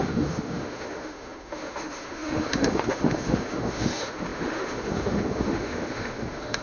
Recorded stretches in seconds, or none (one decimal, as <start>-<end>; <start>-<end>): none